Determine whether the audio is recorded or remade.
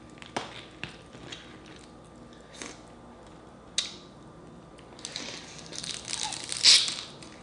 recorded